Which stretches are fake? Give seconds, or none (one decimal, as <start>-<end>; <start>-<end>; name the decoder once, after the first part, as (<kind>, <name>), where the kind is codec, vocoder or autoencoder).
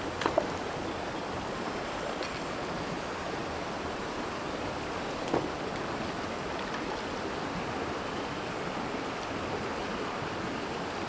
none